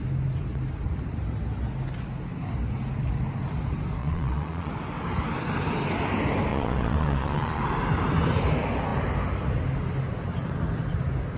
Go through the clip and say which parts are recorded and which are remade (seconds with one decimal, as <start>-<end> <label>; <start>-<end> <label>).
0.0-4.0 recorded; 4.0-4.7 remade; 4.7-6.5 recorded; 6.5-7.6 remade; 7.6-11.4 recorded

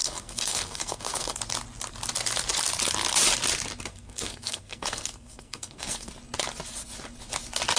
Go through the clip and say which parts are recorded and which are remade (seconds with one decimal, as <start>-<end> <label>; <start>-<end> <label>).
0.0-1.4 remade; 1.4-3.9 recorded; 3.9-6.1 remade; 6.1-7.8 recorded

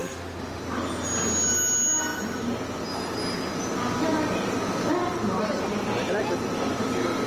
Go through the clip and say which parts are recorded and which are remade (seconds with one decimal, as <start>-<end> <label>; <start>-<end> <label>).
0.0-0.6 remade; 0.6-7.3 recorded

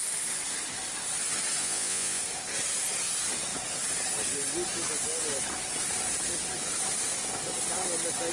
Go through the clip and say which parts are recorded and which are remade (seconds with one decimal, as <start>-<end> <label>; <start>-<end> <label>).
0.0-1.6 recorded; 1.6-2.2 remade; 2.2-8.3 recorded

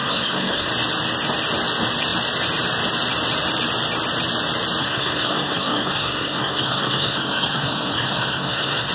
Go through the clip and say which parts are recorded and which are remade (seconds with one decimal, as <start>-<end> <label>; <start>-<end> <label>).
0.0-0.7 remade; 0.7-4.8 recorded; 4.8-8.9 remade

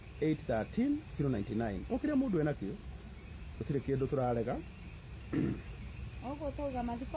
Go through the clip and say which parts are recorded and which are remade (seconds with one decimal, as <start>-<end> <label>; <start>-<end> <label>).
0.0-2.8 recorded; 2.8-5.9 remade; 5.9-7.2 recorded

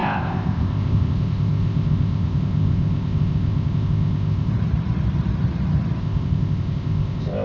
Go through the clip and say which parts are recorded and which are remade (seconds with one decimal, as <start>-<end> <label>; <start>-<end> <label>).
0.0-4.5 remade; 4.5-6.0 recorded; 6.0-7.4 remade

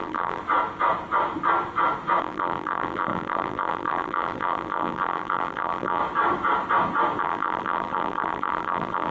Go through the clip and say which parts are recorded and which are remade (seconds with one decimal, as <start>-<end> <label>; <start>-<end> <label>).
0.0-0.4 remade; 0.4-2.2 recorded; 2.2-6.0 remade; 6.0-7.2 recorded; 7.2-9.1 remade